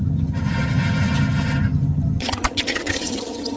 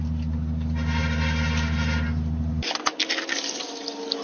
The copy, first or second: first